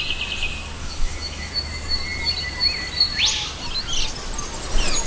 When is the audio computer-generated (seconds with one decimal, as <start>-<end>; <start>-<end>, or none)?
0.8-1.5